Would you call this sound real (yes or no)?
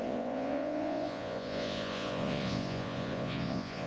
no